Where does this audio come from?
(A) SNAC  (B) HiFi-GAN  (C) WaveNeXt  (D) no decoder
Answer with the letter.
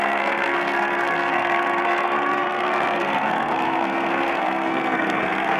A